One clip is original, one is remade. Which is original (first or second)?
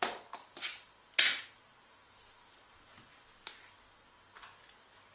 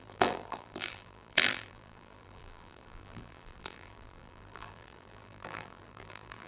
first